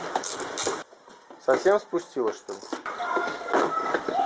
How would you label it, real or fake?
real